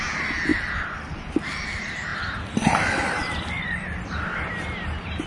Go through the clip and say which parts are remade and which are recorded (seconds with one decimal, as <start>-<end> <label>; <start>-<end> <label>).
0.0-0.5 recorded; 0.5-1.1 remade; 1.1-2.1 recorded; 2.1-3.7 remade; 3.7-5.3 recorded